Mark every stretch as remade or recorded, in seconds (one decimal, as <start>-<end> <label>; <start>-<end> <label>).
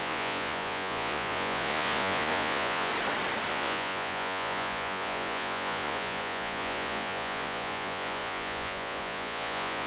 0.0-2.9 remade; 2.9-3.5 recorded; 3.5-9.9 remade